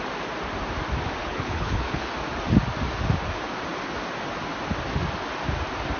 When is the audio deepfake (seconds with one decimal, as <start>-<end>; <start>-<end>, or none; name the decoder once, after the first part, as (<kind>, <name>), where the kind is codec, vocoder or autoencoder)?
1.2-2.1 (codec, HILCodec)

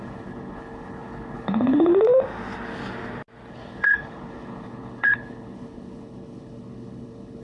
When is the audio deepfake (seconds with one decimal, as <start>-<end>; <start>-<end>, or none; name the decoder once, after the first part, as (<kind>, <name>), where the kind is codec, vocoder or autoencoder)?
0.0-1.9 (codec, HILCodec); 3.5-7.4

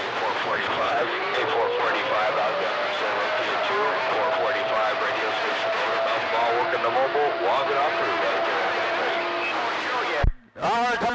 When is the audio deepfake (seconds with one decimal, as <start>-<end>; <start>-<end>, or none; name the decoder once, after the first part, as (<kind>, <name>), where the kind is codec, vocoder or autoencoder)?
0.4-1.2 (codec, HILCodec)

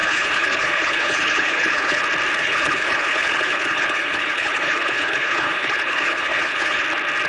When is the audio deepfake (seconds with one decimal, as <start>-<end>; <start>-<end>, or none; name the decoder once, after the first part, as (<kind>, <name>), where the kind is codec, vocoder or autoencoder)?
0.0-2.0 (codec, HILCodec); 2.4-6.8

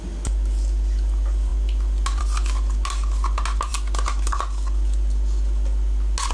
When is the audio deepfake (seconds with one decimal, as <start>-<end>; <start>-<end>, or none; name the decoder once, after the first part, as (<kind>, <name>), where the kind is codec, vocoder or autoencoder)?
none

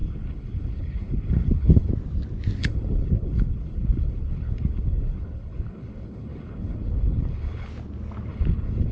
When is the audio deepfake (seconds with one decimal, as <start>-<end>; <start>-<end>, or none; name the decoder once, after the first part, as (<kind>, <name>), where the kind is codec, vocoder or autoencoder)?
0.0-1.9 (codec, HILCodec); 2.6-7.7; 8.3-8.9